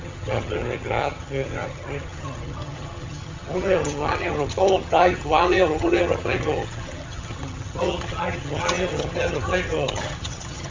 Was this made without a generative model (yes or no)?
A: no